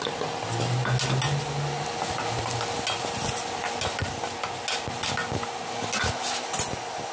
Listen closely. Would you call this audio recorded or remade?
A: recorded